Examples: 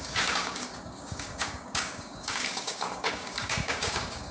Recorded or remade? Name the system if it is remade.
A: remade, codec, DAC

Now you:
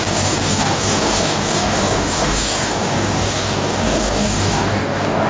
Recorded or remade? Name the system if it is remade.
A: remade, codec, DAC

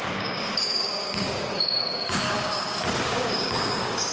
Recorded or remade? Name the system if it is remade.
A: remade, codec, DAC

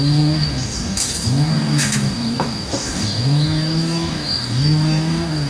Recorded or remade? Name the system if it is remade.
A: remade, codec, DAC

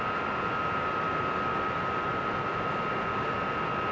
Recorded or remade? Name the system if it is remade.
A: recorded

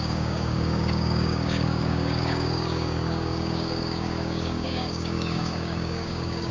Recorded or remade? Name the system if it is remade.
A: remade, codec, DAC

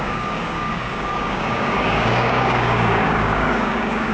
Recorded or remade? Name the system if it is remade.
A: remade, codec, DAC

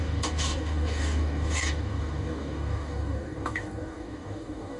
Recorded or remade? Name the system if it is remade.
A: remade, codec, DAC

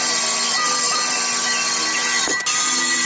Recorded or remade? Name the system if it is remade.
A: recorded